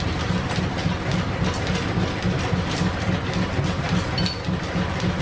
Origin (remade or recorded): recorded